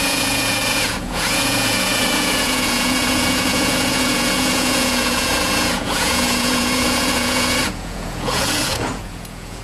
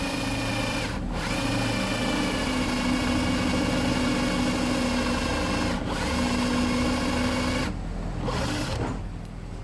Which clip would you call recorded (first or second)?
second